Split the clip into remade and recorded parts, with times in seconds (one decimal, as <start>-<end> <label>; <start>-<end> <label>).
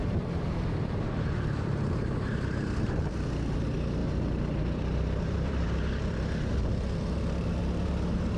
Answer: 0.0-3.1 remade; 3.1-4.0 recorded; 4.0-6.6 remade; 6.6-8.4 recorded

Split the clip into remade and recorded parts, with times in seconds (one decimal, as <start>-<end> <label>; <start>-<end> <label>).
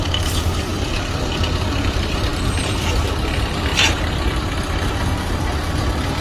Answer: 0.0-3.7 remade; 3.7-4.9 recorded; 4.9-6.2 remade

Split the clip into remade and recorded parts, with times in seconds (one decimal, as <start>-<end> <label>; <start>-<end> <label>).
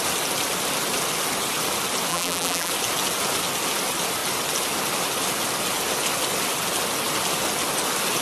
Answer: 0.0-2.1 recorded; 2.1-2.7 remade; 2.7-8.2 recorded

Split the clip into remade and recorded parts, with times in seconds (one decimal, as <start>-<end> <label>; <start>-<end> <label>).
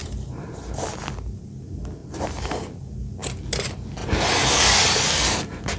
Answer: 0.0-0.6 remade; 0.6-5.8 recorded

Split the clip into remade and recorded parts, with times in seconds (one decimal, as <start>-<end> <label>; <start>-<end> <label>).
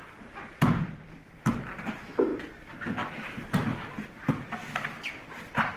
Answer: 0.0-5.8 recorded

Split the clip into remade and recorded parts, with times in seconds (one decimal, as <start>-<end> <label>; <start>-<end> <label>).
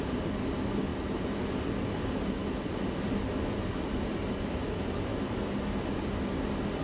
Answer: 0.0-6.8 recorded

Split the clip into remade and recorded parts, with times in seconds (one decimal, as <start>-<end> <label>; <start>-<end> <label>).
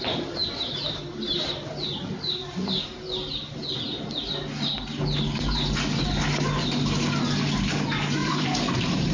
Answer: 0.0-0.4 recorded; 0.4-2.8 remade; 2.8-8.2 recorded; 8.2-9.1 remade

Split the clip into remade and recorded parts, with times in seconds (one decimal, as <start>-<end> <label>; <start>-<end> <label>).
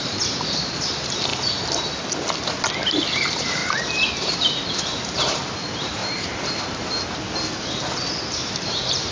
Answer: 0.0-1.3 remade; 1.3-2.9 recorded; 2.9-3.6 remade; 3.6-4.1 recorded; 4.1-6.0 remade; 6.0-8.4 recorded; 8.4-9.1 remade